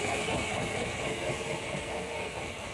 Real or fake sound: fake